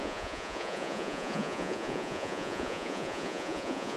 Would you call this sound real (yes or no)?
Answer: no